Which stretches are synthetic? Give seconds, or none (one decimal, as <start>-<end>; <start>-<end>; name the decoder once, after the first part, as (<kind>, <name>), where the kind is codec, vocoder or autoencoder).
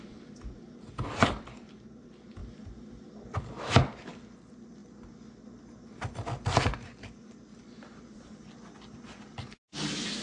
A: none